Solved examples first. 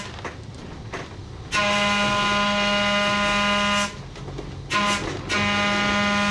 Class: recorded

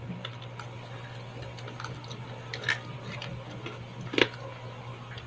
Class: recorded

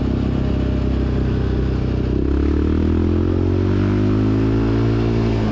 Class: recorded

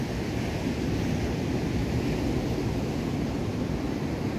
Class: recorded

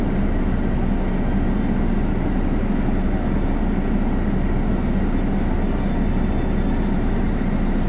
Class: recorded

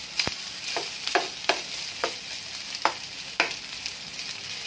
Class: recorded